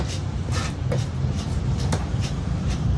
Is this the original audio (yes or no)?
no